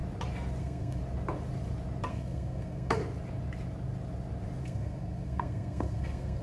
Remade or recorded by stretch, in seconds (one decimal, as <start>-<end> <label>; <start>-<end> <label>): 0.0-0.6 recorded; 0.6-1.0 remade; 1.0-2.1 recorded; 2.1-3.0 remade; 3.0-4.6 recorded; 4.6-6.4 remade